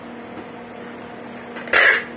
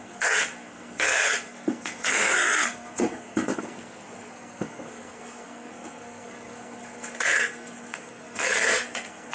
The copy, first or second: second